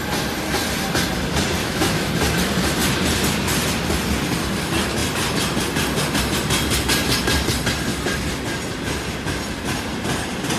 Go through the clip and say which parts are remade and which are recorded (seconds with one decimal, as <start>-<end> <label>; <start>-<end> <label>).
0.0-1.6 recorded; 1.6-2.1 remade; 2.1-10.6 recorded

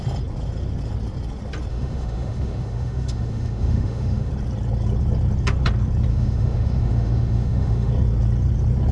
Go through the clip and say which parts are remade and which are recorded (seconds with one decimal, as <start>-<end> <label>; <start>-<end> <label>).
0.0-1.7 recorded; 1.7-4.3 remade; 4.3-6.1 recorded; 6.1-7.9 remade; 7.9-8.9 recorded

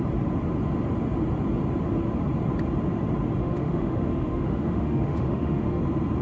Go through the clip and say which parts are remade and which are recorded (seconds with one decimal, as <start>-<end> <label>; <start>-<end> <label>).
0.0-3.4 recorded; 3.4-5.8 remade; 5.8-6.2 recorded

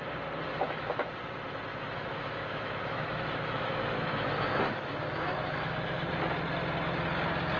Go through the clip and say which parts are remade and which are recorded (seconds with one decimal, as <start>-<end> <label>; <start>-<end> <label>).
0.0-0.5 recorded; 0.5-1.1 remade; 1.1-1.7 recorded; 1.7-6.1 remade; 6.1-7.6 recorded

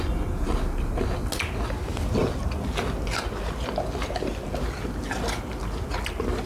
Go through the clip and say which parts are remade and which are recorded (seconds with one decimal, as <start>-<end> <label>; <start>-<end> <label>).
0.0-6.5 recorded

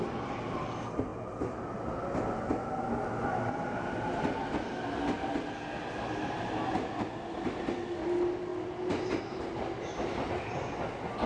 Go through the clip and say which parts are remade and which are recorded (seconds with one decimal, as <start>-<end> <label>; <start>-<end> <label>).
0.0-11.3 recorded